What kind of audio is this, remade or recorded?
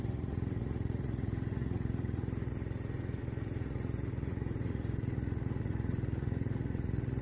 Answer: remade